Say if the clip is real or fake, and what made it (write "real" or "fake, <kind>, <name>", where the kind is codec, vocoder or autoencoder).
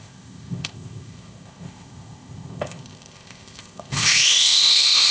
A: fake, codec, ZipCodec